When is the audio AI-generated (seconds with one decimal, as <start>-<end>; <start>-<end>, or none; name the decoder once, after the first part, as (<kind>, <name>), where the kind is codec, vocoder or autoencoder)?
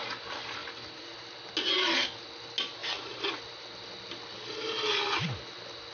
none